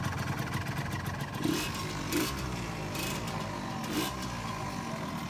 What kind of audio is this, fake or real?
real